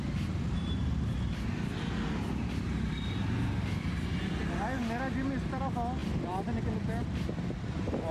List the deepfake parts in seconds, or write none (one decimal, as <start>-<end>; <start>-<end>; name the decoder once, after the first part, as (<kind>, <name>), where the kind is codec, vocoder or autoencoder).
none